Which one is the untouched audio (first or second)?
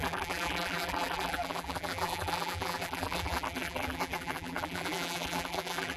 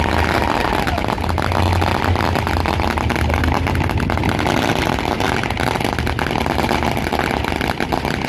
second